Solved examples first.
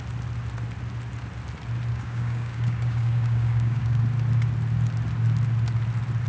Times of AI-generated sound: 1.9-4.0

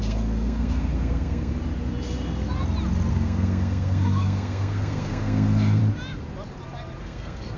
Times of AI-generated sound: 0.0-1.5; 3.1-5.8; 7.0-7.6

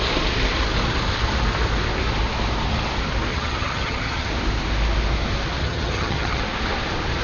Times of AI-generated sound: 3.3-4.3; 5.6-6.4

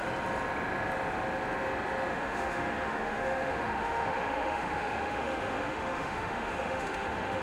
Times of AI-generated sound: 2.1-7.4

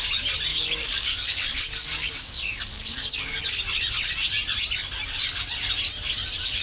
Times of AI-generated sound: 0.5-3.4

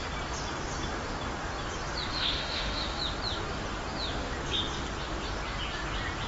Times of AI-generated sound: 2.1-3.0

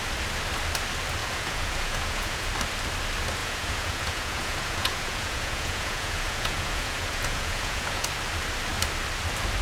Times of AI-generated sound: 1.2-2.5; 3.4-8.1

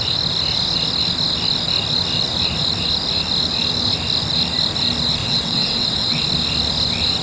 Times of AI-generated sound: 5.2-6.2